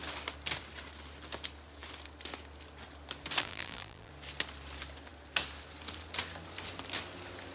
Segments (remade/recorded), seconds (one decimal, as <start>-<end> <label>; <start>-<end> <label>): 0.0-3.4 recorded; 3.4-4.1 remade; 4.1-7.5 recorded